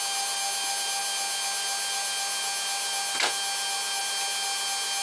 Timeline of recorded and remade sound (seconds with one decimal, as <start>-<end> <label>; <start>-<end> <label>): 0.0-5.0 recorded